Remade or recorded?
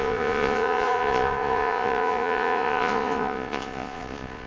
remade